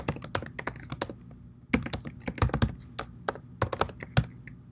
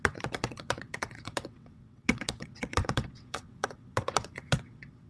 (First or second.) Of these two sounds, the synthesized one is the second